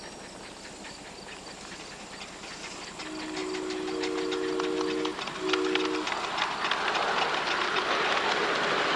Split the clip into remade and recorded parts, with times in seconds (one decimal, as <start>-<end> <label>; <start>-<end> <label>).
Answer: 0.0-9.0 recorded